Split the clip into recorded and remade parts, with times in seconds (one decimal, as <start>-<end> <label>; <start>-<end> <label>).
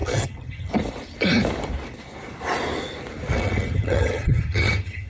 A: 0.0-0.7 remade; 0.7-3.3 recorded; 3.3-5.1 remade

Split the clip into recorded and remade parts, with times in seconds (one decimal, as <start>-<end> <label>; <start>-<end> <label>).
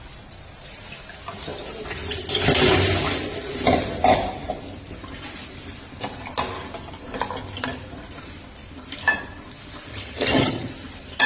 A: 0.0-9.9 recorded; 9.9-10.7 remade; 10.7-11.3 recorded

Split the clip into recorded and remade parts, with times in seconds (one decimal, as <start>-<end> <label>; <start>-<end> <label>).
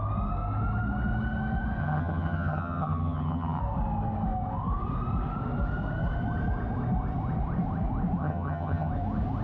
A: 0.0-1.8 recorded; 1.8-3.6 remade; 3.6-8.2 recorded; 8.2-8.9 remade; 8.9-9.4 recorded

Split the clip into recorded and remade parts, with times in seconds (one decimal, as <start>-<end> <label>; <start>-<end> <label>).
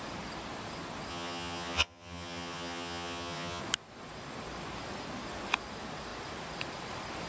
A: 0.0-1.1 recorded; 1.1-3.6 remade; 3.6-7.3 recorded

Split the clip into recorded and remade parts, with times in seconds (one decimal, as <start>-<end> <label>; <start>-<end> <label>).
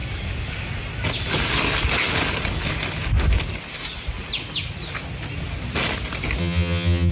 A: 0.0-6.4 recorded; 6.4-7.1 remade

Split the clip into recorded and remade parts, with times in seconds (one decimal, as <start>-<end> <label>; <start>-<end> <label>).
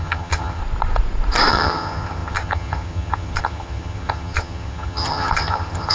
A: 0.0-0.6 remade; 0.6-1.5 recorded; 1.5-5.9 remade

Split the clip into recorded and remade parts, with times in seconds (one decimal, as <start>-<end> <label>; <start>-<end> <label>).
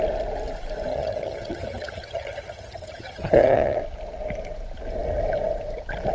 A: 0.0-0.9 recorded; 0.9-3.8 remade; 3.8-6.1 recorded